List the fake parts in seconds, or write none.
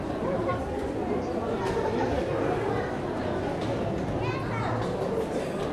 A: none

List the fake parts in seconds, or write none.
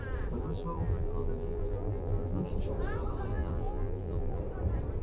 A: 0.4-2.5 (vocoder, BigVGAN v2); 3.3-4.4